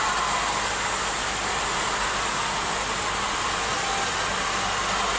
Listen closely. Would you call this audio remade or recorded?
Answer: recorded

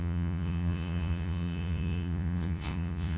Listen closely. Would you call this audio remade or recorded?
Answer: remade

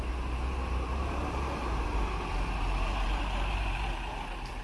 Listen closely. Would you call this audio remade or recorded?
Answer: remade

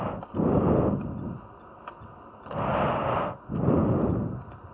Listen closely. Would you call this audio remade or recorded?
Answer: recorded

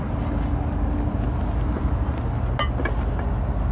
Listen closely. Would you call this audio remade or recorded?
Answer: recorded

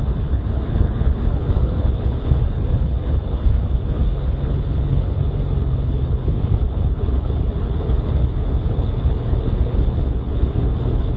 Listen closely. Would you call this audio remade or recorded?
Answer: remade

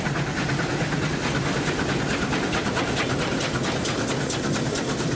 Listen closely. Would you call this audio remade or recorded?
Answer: recorded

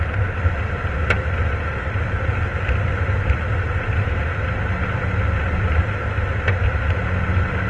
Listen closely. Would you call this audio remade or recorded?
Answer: recorded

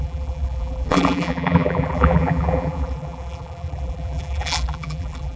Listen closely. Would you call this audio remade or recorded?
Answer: remade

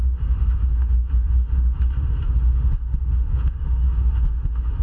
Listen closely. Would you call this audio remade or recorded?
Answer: remade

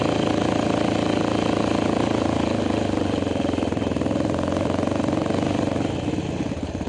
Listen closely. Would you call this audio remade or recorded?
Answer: recorded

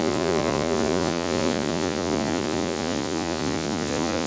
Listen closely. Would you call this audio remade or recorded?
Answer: remade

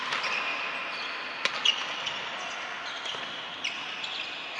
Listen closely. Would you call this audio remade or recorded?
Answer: recorded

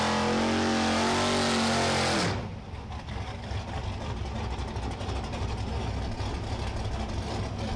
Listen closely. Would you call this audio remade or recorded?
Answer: recorded